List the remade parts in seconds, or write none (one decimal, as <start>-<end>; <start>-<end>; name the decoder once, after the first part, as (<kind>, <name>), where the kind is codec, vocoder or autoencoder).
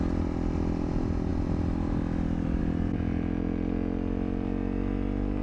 none